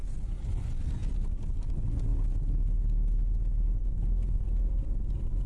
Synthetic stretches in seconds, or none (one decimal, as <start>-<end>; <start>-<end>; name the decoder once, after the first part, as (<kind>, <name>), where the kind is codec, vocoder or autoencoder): none